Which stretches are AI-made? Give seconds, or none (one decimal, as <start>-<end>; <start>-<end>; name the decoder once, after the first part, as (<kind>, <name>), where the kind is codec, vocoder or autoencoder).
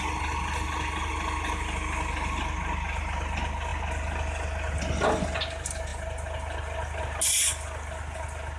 none